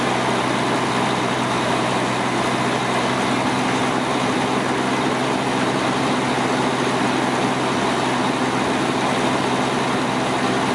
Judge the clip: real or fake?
real